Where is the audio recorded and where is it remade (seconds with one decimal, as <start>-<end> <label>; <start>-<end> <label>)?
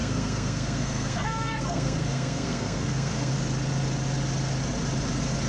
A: 0.0-3.3 remade; 3.3-5.5 recorded